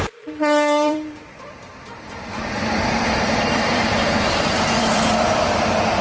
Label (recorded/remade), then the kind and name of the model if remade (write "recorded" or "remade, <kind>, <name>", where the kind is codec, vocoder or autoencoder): remade, vocoder, BigVGAN v2